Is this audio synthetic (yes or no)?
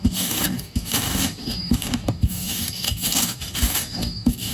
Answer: yes